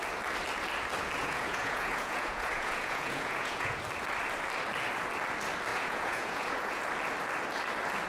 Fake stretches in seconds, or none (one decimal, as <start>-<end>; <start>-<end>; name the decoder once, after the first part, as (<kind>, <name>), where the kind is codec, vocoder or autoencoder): 1.2-3.8 (vocoder, Vocos); 5.7-6.8